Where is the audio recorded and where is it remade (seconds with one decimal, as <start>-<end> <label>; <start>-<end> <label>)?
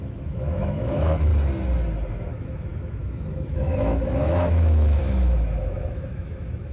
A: 0.0-1.3 remade; 1.3-2.1 recorded; 2.1-6.7 remade